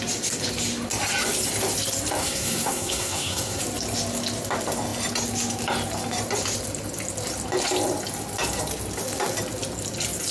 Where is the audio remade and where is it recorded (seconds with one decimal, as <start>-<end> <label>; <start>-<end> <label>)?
0.0-2.2 recorded; 2.2-3.6 remade; 3.6-10.3 recorded